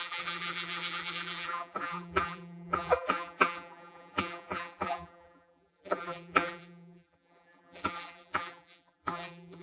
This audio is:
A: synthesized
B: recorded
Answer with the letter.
A